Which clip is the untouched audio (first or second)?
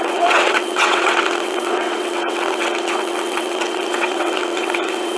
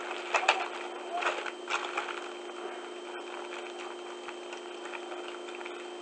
second